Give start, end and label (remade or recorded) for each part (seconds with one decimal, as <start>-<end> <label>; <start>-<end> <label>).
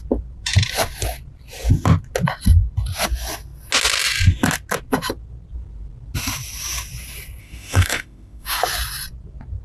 0.0-7.4 recorded; 7.4-8.6 remade; 8.6-9.6 recorded